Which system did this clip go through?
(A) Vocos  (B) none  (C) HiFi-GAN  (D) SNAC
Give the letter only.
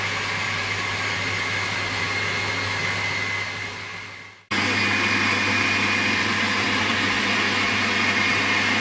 B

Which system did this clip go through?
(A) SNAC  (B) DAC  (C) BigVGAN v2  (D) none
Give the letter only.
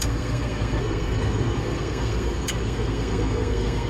A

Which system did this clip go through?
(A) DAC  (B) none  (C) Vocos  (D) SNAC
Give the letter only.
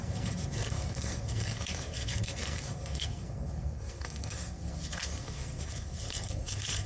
D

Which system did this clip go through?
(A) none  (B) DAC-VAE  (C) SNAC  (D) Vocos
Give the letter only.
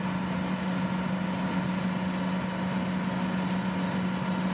A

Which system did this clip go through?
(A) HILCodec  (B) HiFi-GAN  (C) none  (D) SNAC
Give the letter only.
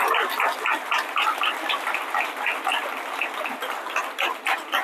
C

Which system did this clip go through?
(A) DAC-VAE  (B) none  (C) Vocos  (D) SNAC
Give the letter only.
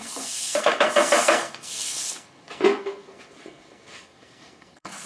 D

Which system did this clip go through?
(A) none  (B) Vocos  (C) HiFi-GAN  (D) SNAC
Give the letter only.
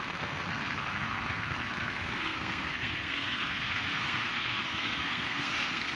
D